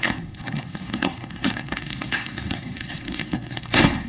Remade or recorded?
remade